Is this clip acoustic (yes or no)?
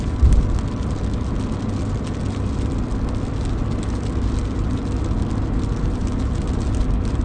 yes